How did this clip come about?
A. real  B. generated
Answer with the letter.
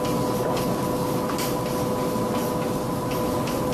A